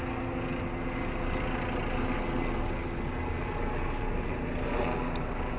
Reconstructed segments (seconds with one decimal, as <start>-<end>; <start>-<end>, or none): none